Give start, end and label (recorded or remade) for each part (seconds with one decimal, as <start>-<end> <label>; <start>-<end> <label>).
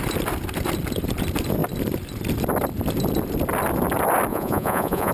0.0-4.3 recorded; 4.3-5.1 remade